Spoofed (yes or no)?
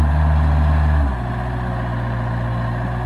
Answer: no